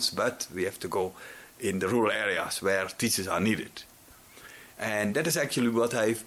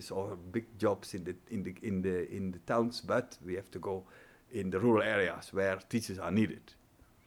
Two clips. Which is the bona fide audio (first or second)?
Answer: second